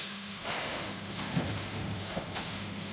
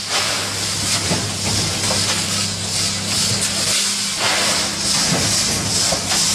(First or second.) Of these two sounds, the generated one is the first